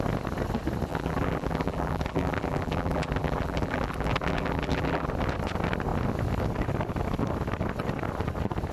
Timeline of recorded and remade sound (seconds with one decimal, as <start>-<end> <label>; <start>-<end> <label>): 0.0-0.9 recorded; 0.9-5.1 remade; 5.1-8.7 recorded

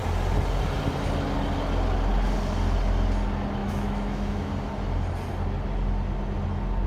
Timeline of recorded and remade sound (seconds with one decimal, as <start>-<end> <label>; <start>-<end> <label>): 0.0-3.6 recorded; 3.6-4.5 remade; 4.5-6.9 recorded

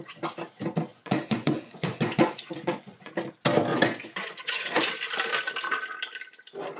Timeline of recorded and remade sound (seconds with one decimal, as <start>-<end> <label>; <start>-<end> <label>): 0.0-0.9 recorded; 0.9-3.1 remade; 3.1-3.7 recorded; 3.7-4.9 remade; 4.9-6.8 recorded